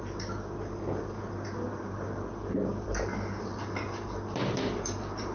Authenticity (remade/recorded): recorded